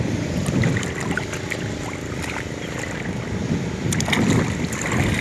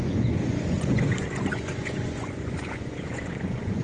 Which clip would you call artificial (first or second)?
second